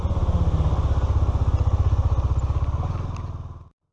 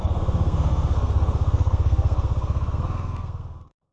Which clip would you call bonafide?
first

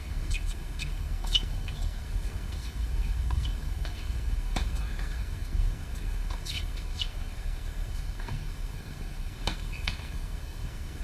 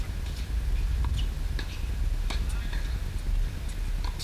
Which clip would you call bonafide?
second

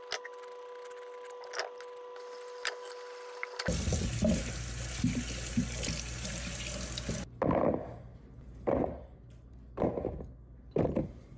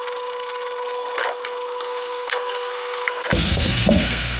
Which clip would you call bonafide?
first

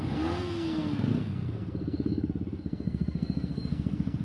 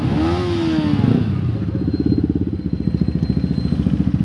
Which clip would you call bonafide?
second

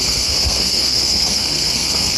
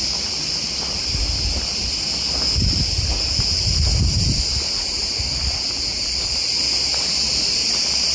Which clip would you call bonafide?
second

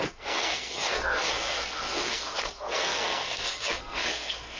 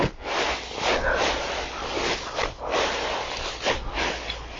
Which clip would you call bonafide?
second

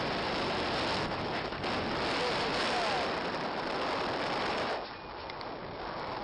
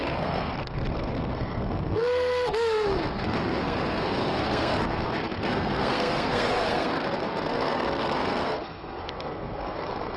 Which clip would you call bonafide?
first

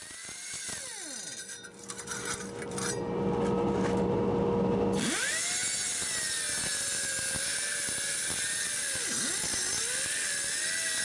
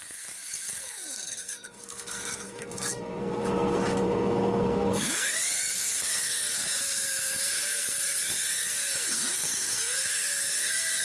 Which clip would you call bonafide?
first